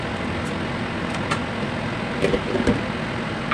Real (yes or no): yes